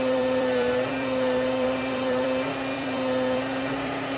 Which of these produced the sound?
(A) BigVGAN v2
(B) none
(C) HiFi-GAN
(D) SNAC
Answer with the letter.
A